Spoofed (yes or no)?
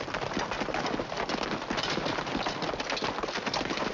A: no